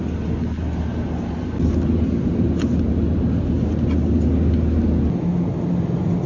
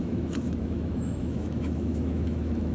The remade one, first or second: second